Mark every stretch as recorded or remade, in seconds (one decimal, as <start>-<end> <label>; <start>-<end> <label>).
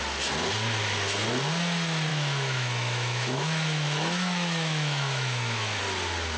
0.0-2.1 recorded; 2.1-5.8 remade; 5.8-6.4 recorded